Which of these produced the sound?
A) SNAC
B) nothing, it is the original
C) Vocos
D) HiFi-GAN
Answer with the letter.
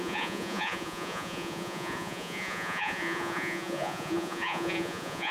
C